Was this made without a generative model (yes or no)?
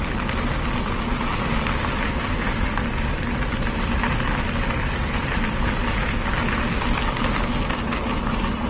yes